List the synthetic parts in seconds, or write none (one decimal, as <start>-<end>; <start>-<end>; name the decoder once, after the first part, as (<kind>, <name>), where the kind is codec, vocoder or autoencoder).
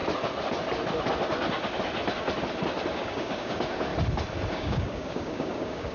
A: 2.9-3.9 (codec, DAC); 4.5-5.9